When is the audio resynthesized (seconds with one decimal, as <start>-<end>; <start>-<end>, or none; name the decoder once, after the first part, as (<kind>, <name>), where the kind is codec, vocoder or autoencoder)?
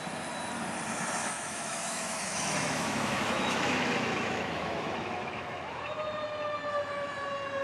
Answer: 1.2-5.8 (autoencoder, DAC-VAE)